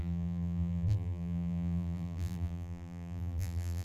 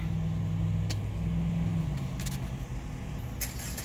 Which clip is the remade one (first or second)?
first